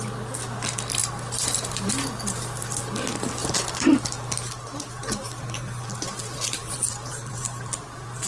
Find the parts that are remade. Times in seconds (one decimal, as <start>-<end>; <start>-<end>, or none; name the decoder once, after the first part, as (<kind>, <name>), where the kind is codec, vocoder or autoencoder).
1.0-2.0 (vocoder, BigVGAN v2); 3.4-4.0